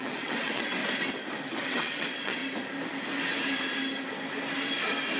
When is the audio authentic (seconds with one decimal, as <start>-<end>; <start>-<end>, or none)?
0.8-1.6; 2.4-5.2